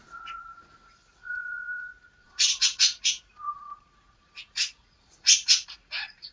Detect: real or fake fake